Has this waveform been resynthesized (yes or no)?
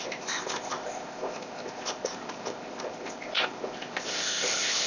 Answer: yes